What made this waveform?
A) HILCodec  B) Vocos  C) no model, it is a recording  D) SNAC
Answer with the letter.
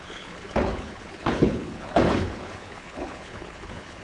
A